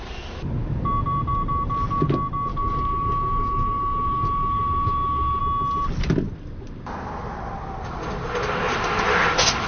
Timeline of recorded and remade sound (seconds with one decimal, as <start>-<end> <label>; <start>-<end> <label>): 0.0-2.5 recorded; 2.5-5.4 remade; 5.4-9.7 recorded

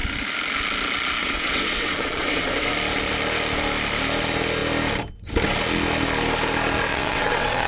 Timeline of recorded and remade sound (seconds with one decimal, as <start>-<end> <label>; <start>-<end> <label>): 0.0-1.2 recorded; 1.2-2.7 remade; 2.7-6.9 recorded; 6.9-7.7 remade

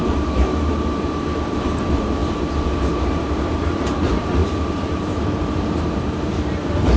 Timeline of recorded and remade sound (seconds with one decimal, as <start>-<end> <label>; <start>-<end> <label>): 0.0-2.2 remade; 2.2-2.9 recorded; 2.9-7.0 remade